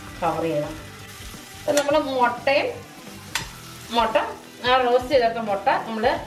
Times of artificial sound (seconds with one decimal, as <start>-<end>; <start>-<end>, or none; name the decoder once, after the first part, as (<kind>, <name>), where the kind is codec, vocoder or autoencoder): 1.0-4.2 (vocoder, BigVGAN v2)

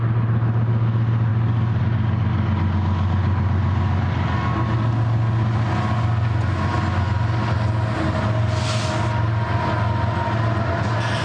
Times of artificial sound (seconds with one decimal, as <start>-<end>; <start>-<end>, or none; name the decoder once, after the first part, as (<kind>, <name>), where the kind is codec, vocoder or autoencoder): none